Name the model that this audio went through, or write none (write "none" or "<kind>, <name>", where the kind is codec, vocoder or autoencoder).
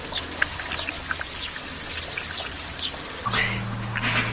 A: none